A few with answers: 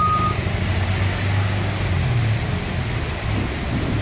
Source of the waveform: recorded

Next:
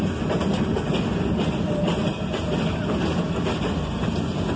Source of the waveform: recorded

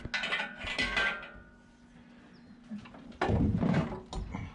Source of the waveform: recorded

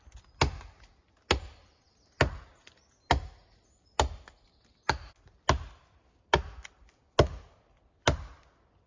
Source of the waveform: recorded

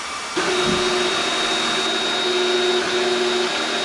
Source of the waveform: recorded